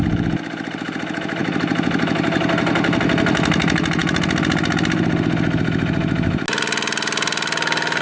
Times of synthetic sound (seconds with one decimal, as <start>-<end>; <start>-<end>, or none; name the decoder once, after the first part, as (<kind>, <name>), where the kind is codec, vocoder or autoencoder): none